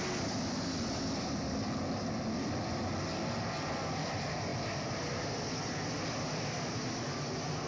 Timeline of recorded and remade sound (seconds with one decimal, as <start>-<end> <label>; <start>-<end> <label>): 0.0-7.7 recorded